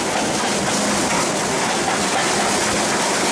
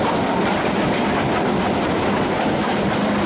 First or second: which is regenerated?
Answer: second